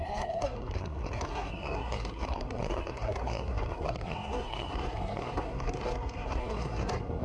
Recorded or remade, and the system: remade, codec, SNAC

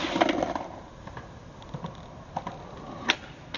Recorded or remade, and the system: recorded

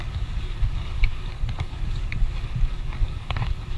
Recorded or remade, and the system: remade, codec, DAC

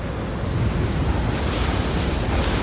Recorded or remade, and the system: recorded